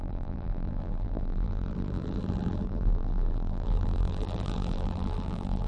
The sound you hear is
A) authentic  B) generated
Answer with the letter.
B